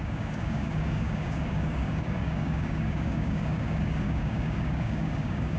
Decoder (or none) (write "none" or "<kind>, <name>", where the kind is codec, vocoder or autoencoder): codec, DAC